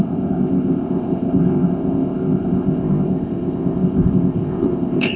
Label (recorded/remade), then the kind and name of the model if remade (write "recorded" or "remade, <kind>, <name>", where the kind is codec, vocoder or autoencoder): remade, codec, ZipCodec